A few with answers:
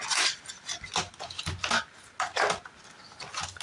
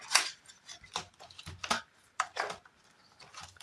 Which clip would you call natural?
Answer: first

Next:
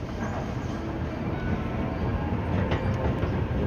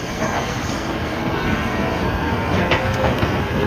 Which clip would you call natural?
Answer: first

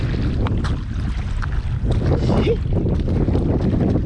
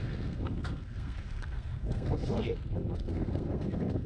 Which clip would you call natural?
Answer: first